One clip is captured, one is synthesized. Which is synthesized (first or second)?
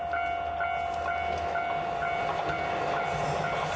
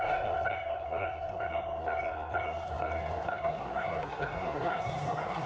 second